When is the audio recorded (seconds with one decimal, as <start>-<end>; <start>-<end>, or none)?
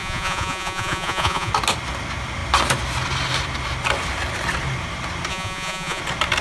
1.5-5.3; 6.0-6.4